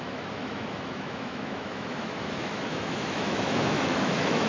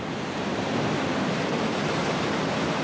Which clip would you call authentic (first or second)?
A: second